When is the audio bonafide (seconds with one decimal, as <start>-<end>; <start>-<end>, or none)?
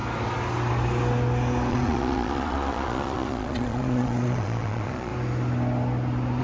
0.0-1.7; 5.1-6.4